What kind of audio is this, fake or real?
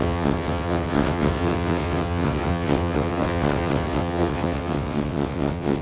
fake